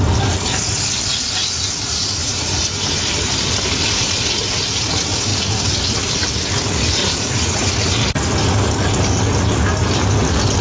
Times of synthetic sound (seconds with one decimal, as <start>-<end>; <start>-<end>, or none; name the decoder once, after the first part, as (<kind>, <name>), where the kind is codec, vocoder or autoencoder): 1.9-2.9 (vocoder, Vocos); 7.0-7.7